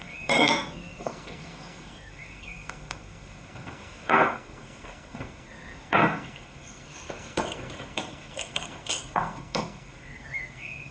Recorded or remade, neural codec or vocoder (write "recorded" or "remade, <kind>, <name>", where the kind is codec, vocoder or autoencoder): remade, codec, SNAC